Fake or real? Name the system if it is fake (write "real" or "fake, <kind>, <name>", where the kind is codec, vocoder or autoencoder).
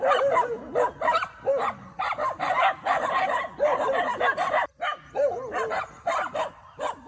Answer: real